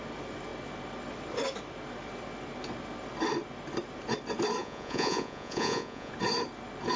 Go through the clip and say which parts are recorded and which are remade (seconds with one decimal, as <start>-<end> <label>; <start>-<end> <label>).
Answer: 0.0-4.6 recorded; 4.6-6.1 remade; 6.1-7.0 recorded